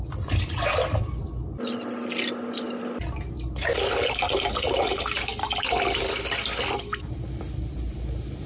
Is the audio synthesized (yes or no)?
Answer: no